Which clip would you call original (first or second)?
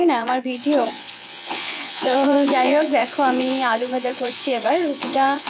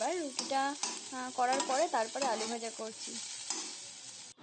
second